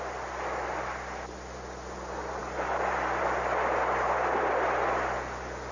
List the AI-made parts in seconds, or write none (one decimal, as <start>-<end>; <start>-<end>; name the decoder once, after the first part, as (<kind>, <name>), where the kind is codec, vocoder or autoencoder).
none